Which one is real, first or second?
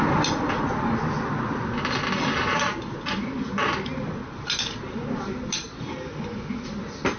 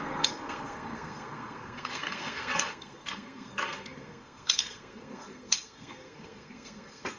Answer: first